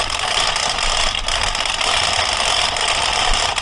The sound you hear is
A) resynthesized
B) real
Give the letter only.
B